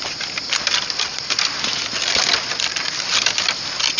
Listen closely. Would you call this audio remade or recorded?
recorded